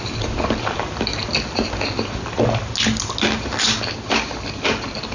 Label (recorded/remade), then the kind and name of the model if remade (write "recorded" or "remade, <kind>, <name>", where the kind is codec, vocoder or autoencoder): recorded